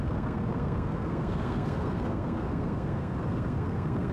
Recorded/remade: remade